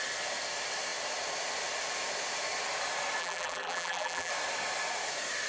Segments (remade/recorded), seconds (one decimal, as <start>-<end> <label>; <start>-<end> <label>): 0.0-3.2 recorded; 3.2-4.3 remade; 4.3-5.5 recorded

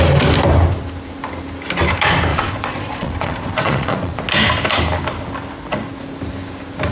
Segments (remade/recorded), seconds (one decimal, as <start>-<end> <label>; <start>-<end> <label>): 0.0-2.3 recorded; 2.3-4.2 remade; 4.2-6.9 recorded